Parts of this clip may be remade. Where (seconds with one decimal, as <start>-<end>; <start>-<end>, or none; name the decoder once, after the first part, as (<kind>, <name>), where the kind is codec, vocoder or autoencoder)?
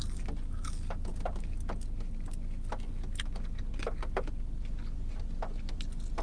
none